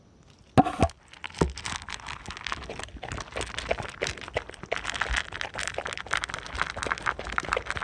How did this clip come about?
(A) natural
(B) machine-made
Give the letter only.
A